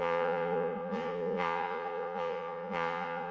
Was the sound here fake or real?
fake